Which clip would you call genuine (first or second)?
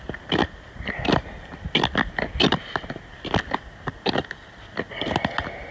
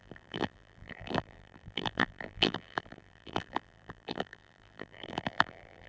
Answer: first